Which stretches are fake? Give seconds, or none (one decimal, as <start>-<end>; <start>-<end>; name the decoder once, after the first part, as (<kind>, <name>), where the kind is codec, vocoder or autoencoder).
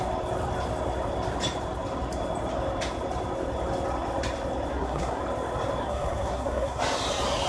4.7-5.2 (codec, SNAC); 5.8-6.8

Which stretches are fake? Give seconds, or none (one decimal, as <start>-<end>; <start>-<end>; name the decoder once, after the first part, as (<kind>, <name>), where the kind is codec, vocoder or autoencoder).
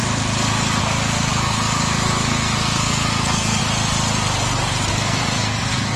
0.8-3.6 (codec, SNAC); 4.9-6.0